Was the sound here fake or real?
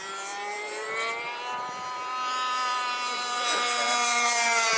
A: fake